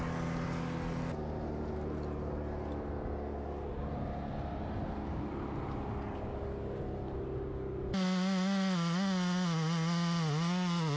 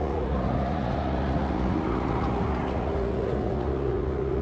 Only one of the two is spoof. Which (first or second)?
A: second